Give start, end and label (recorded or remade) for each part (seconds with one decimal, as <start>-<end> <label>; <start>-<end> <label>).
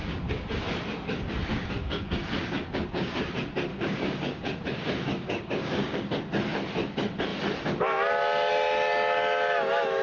0.0-0.6 remade; 0.6-1.5 recorded; 1.5-3.3 remade; 3.3-3.7 recorded; 3.7-6.1 remade; 6.1-10.0 recorded